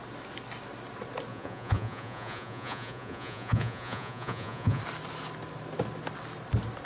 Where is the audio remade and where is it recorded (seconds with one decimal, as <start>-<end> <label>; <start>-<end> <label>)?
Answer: 0.0-1.3 recorded; 1.3-4.8 remade; 4.8-6.9 recorded